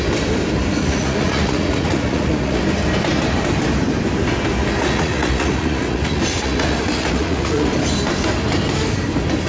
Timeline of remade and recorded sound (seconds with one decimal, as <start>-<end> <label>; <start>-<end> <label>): 0.0-0.8 recorded; 0.8-2.6 remade; 2.6-4.8 recorded; 4.8-7.7 remade; 7.7-9.5 recorded